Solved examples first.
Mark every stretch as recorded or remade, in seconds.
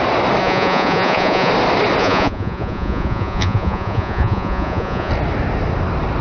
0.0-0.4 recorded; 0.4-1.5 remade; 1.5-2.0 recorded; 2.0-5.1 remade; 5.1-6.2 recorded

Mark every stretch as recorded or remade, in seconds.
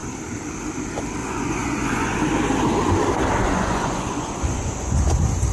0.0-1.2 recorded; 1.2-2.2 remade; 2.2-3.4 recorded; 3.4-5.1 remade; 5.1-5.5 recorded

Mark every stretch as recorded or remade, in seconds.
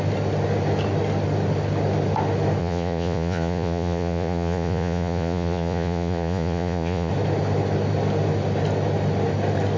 0.0-2.6 recorded; 2.6-7.1 remade; 7.1-9.8 recorded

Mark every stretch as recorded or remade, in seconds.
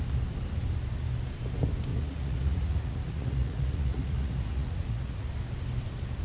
0.0-1.9 recorded; 1.9-5.3 remade; 5.3-6.2 recorded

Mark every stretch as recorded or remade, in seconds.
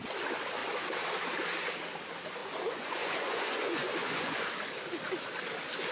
0.0-2.4 recorded; 2.4-4.5 remade; 4.5-5.9 recorded